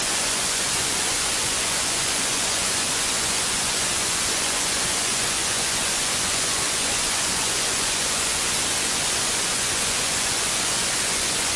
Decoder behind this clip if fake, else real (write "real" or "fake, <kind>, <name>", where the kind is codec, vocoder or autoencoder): fake, vocoder, Vocos